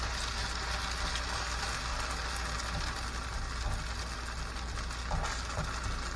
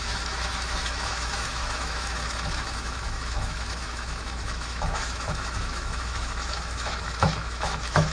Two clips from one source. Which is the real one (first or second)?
first